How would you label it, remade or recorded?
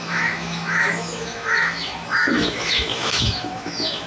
remade